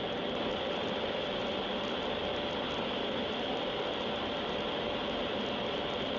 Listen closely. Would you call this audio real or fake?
real